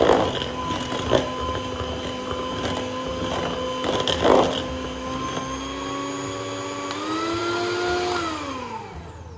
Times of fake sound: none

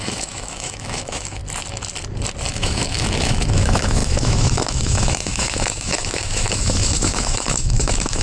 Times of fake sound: 0.0-1.4; 2.5-8.2

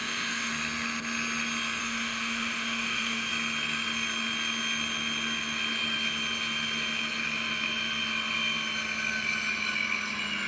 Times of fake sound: 0.0-0.5; 1.8-3.3

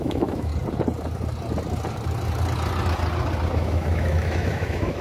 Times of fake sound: 0.0-0.5; 3.5-5.0